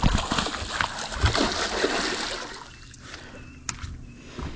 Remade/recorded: recorded